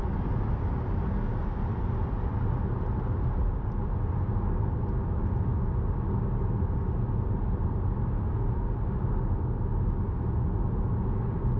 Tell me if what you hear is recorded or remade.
recorded